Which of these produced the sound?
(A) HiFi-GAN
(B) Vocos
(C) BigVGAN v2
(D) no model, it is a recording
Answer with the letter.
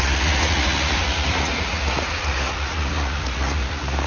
B